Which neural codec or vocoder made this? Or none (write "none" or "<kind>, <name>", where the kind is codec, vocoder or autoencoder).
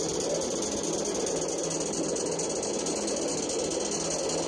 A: none